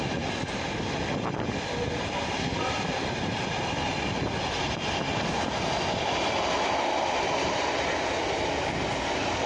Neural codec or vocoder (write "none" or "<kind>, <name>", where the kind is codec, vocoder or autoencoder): none